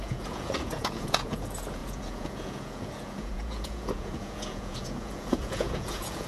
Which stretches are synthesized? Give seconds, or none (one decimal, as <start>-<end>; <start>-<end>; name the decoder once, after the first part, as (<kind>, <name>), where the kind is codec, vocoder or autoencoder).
0.0-6.3 (vocoder, Vocos)